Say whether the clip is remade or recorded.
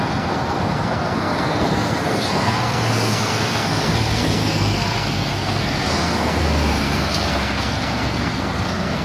remade